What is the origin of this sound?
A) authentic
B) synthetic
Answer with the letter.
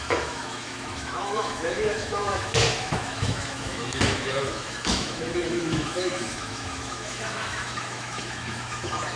B